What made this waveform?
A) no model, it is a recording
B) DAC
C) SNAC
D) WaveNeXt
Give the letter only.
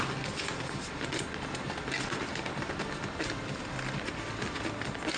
A